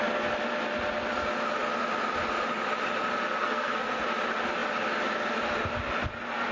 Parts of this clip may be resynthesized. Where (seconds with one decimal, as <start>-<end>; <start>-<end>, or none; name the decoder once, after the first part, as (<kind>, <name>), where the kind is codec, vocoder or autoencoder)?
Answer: 3.4-4.0 (codec, SNAC)